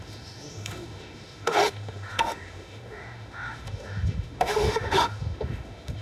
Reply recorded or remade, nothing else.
remade